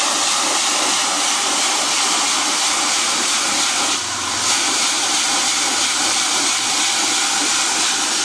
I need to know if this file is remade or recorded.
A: recorded